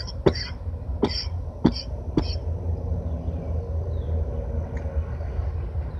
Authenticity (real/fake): real